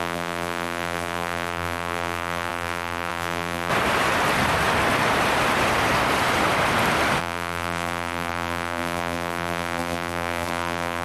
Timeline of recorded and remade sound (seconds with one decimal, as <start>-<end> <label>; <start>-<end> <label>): 0.0-3.7 remade; 3.7-7.2 recorded; 7.2-11.0 remade